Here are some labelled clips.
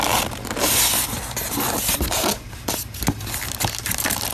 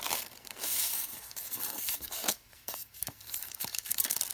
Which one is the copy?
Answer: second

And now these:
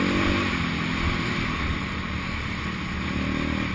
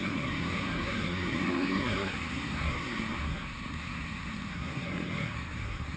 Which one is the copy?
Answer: second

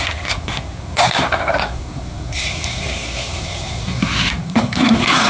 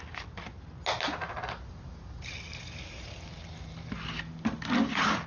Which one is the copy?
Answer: first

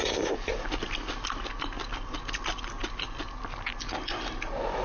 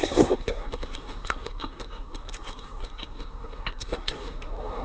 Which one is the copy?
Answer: second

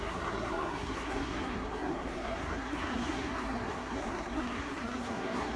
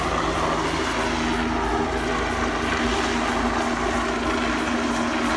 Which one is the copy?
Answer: first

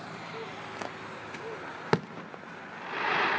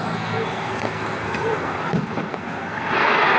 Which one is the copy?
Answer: second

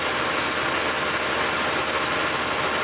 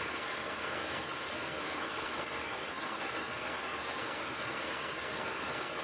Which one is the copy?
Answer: second